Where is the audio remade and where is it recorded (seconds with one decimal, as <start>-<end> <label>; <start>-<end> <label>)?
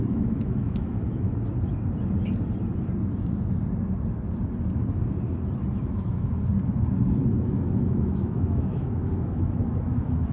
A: 0.0-1.3 remade; 1.3-5.7 recorded; 5.7-6.3 remade; 6.3-7.3 recorded; 7.3-10.3 remade